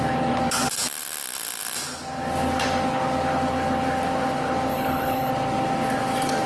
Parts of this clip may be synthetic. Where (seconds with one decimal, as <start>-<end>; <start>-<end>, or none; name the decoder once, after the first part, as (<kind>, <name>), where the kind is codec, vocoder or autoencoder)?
4.7-5.3 (codec, HILCodec)